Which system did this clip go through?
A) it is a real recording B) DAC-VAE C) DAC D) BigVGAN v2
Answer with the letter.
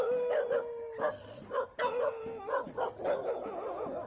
A